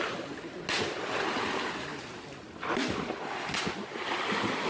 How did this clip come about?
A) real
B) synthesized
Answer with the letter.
A